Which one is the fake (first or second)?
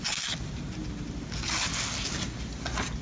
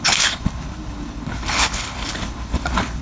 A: second